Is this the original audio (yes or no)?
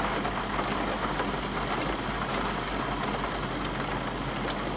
yes